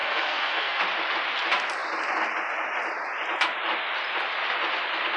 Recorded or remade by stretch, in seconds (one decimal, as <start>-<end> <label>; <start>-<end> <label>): 0.0-0.8 remade; 0.8-5.2 recorded